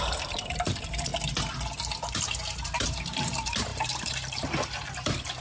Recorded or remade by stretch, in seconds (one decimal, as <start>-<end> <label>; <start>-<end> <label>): 0.0-1.1 remade; 1.1-2.6 recorded; 2.6-5.4 remade